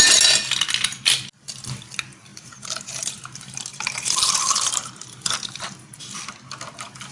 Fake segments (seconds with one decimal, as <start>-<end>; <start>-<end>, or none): 2.3-3.2; 3.7-6.0